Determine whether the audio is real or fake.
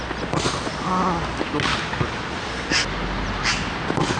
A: real